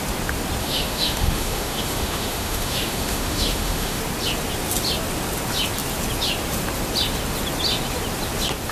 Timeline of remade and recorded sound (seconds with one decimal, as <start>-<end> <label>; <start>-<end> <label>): 0.0-0.6 recorded; 0.6-4.0 remade; 4.0-8.7 recorded